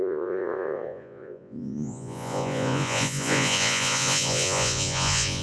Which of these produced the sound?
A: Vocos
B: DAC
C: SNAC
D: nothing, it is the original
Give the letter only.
A